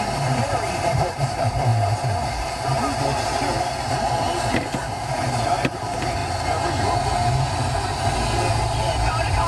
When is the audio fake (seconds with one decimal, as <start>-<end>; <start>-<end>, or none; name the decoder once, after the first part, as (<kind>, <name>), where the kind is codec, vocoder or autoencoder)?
0.0-1.7 (vocoder, BigVGAN v2); 5.1-6.2; 8.6-9.5